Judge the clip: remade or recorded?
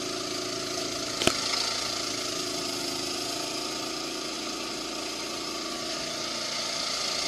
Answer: recorded